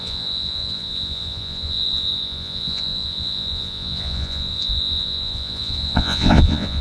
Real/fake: fake